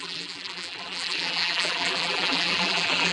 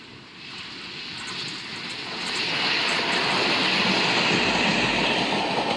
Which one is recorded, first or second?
second